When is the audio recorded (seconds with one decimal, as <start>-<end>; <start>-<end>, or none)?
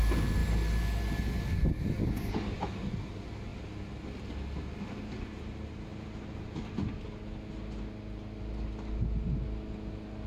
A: 0.0-10.3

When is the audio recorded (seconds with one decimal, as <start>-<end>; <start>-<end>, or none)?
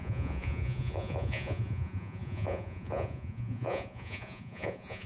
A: none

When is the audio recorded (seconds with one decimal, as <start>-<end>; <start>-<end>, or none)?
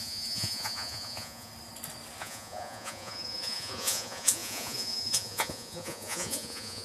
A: 1.5-2.2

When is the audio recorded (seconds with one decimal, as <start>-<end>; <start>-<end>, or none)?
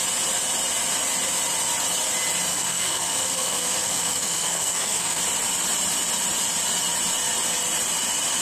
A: 0.0-2.5; 5.2-8.4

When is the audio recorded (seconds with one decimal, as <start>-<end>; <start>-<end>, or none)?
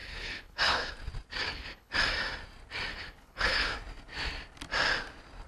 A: 0.9-1.4; 1.9-2.9; 3.8-5.5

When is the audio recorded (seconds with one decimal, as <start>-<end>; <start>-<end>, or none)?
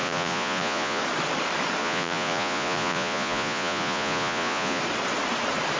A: 1.0-1.8; 4.8-5.8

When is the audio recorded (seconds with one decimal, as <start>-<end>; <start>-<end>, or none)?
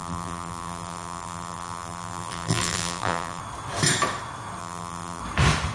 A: 3.4-4.6; 5.2-5.7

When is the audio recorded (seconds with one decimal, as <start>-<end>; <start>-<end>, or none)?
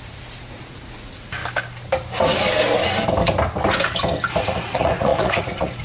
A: 1.4-4.4